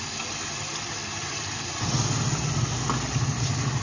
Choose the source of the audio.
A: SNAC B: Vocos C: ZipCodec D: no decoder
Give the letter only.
D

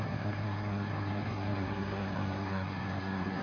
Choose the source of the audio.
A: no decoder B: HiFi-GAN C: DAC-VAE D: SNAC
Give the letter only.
D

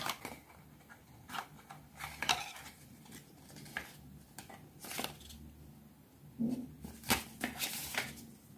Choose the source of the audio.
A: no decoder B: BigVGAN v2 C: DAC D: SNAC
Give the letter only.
A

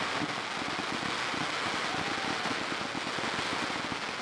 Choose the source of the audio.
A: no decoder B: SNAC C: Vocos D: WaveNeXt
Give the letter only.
A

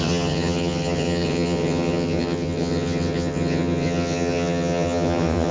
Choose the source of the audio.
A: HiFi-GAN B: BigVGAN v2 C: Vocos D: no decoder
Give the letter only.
A